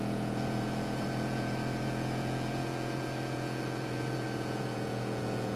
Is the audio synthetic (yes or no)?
yes